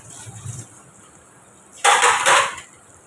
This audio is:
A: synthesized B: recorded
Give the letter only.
B